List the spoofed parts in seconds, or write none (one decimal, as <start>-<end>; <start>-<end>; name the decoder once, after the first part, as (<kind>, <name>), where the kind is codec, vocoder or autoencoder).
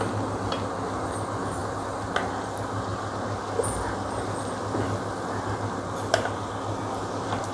none